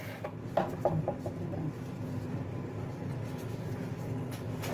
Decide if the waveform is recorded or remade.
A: recorded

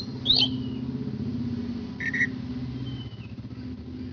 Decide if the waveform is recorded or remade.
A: recorded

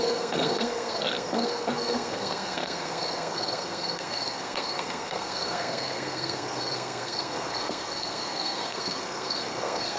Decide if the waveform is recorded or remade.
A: remade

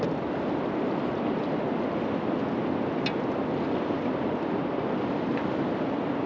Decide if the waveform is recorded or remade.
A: recorded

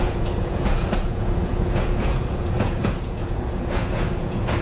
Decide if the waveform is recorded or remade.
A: remade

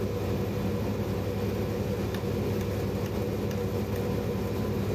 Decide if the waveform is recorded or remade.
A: recorded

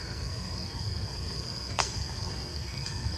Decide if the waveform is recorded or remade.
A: remade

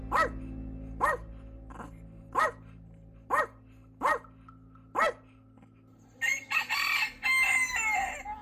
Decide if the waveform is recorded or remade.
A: recorded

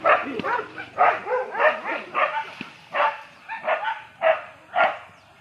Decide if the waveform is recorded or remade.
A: recorded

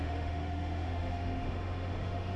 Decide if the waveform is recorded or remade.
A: remade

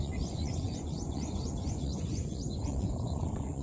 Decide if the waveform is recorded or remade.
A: remade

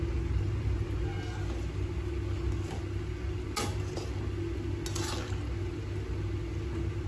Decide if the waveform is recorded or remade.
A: recorded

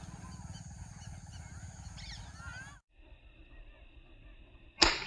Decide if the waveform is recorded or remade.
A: recorded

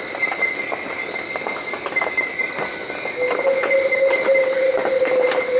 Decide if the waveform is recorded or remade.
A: recorded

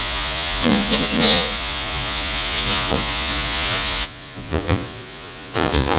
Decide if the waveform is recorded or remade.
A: remade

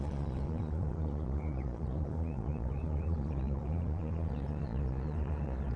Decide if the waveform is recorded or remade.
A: remade